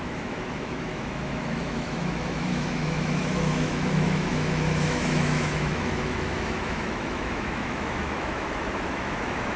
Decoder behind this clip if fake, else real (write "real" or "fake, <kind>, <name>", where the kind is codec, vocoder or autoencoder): fake, autoencoder, DAC-VAE